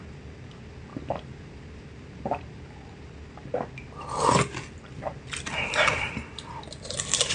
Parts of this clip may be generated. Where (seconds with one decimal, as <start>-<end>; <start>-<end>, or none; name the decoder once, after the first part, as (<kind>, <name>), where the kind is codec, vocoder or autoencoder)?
0.9-1.6 (vocoder, BigVGAN v2); 5.9-6.5